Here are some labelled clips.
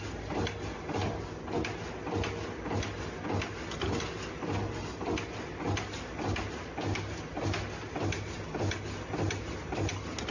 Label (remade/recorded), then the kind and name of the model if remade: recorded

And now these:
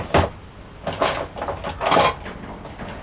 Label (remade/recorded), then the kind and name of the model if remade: recorded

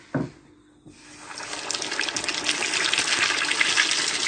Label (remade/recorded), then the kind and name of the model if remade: recorded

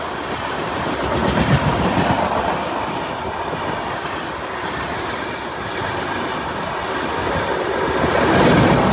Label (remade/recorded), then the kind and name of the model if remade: recorded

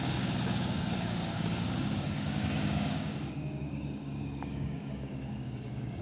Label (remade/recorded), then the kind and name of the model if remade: remade, codec, DAC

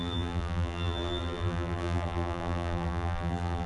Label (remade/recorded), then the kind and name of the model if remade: remade, vocoder, BigVGAN v2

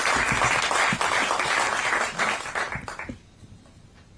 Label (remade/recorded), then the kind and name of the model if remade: remade, vocoder, BigVGAN v2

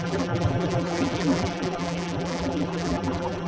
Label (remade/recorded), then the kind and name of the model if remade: remade, vocoder, BigVGAN v2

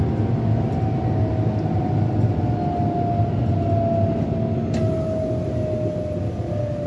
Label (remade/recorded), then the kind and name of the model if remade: recorded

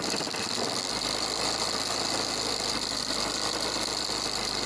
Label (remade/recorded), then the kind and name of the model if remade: recorded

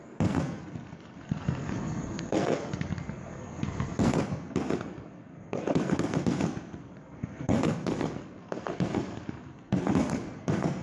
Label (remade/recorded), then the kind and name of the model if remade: remade, codec, SNAC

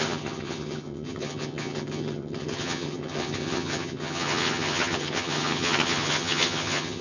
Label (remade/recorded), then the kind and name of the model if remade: remade, vocoder, HiFi-GAN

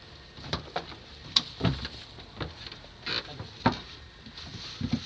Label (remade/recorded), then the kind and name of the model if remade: remade, vocoder, BigVGAN v2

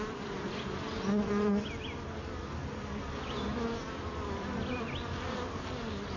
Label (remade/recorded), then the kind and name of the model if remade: recorded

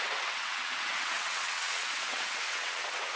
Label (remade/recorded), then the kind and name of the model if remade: remade, vocoder, WaveNeXt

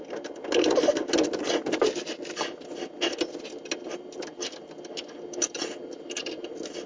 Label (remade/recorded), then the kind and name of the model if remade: recorded